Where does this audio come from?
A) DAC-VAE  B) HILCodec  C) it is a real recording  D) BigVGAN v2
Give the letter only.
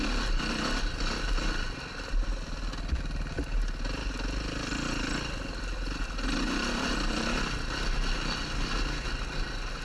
C